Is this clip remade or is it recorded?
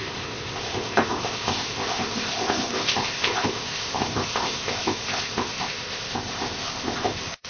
remade